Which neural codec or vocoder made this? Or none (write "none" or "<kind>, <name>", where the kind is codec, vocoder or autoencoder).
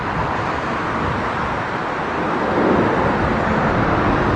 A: none